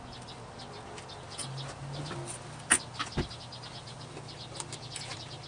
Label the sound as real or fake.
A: real